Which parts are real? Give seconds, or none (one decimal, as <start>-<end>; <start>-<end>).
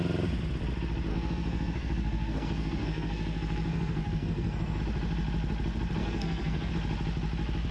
0.0-1.1; 4.8-6.0; 6.7-7.7